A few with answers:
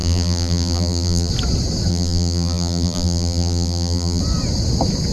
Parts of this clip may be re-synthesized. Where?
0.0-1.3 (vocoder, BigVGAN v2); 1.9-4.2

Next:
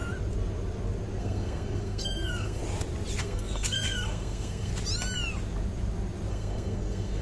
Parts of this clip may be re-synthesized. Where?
1.2-2.6 (codec, SNAC); 3.2-4.7; 6.3-7.2

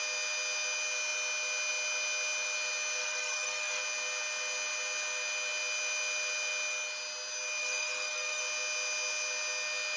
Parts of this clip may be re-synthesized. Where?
3.0-3.8 (codec, DAC); 7.6-8.4

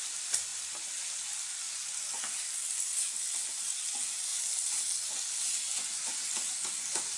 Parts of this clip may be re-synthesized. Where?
none

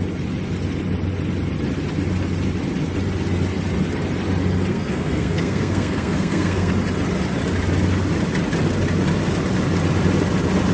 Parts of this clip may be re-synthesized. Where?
4.7-6.7 (codec, SNAC)

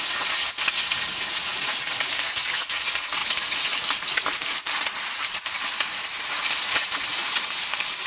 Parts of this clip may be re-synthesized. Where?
3.2-8.1 (vocoder, BigVGAN v2)

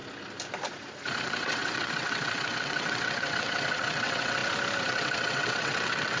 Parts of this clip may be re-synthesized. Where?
1.2-4.4 (vocoder, WaveNeXt); 4.9-6.2

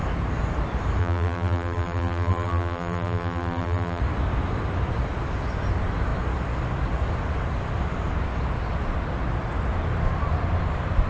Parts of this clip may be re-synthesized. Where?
1.0-4.0 (vocoder, BigVGAN v2)